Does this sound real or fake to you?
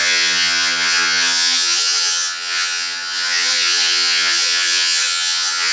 fake